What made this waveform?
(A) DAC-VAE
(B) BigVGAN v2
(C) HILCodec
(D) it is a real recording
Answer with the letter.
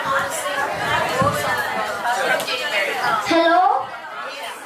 D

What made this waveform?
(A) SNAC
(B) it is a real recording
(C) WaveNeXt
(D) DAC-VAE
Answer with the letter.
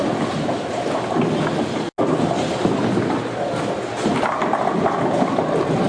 B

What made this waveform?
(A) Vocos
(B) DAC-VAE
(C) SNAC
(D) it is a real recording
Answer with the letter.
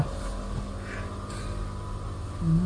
D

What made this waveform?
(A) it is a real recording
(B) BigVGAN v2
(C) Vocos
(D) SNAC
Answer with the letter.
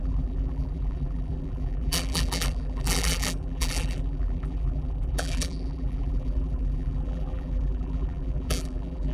B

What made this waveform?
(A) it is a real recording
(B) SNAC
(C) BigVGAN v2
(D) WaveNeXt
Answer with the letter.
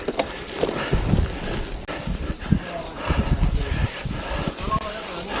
A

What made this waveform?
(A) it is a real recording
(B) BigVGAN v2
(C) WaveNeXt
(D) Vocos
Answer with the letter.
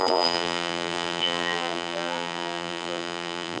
B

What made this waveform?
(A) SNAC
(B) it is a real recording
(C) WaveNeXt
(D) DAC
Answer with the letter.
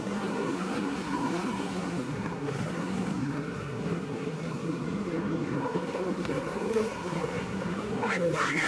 A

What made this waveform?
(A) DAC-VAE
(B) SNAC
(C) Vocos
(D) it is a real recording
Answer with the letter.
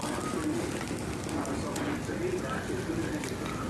D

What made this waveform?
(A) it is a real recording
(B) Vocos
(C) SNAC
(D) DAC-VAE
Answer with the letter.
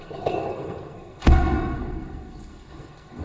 C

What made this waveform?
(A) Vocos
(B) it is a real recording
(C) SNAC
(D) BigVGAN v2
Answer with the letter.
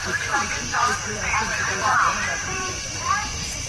A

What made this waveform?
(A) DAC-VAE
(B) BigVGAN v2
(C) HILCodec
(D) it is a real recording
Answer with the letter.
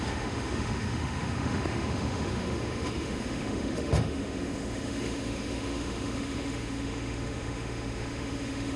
A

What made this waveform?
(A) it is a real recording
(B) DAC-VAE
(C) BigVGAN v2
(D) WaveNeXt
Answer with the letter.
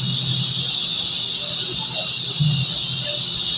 A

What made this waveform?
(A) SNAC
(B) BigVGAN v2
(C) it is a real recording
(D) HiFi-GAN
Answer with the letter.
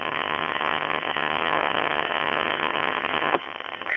D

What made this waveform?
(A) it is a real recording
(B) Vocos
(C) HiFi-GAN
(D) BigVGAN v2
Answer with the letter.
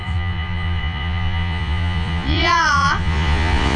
B